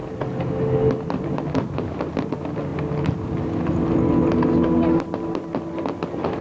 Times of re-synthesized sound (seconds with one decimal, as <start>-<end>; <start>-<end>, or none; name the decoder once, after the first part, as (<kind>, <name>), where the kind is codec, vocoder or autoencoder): none